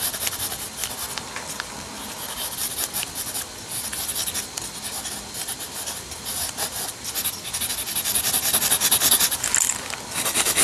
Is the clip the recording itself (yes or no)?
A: yes